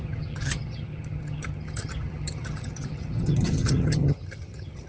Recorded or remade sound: remade